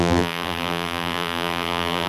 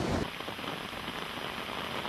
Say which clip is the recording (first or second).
second